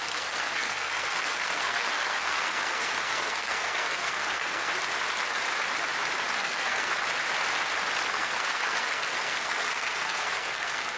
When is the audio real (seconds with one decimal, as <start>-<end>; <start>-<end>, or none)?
4.7-6.4; 7.0-8.1